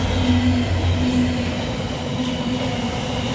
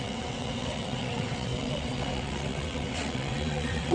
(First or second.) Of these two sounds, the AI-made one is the second